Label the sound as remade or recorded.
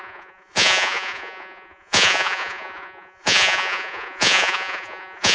remade